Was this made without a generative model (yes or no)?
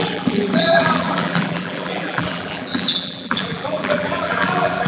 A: no